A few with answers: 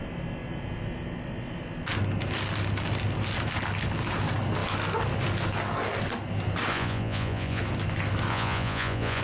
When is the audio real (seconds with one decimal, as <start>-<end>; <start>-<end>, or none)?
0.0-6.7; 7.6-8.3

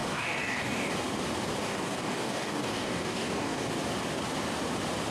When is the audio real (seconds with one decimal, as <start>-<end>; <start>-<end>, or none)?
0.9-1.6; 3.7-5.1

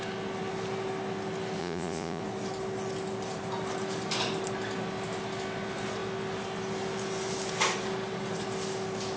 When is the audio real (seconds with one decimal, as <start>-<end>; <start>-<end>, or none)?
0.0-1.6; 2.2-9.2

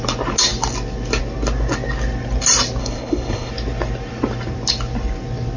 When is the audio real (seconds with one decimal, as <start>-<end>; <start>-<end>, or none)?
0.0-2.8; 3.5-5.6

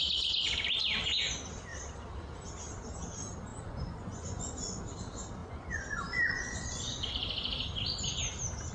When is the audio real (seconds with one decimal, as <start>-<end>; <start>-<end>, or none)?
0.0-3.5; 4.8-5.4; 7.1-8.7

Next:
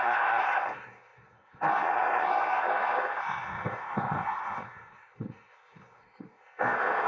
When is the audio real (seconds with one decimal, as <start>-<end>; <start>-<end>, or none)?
none